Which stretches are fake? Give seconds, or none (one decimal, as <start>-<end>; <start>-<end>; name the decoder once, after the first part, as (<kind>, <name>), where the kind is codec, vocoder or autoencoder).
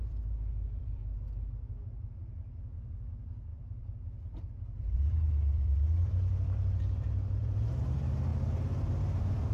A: 0.0-1.0 (vocoder, BigVGAN v2); 2.9-8.3; 9.0-9.5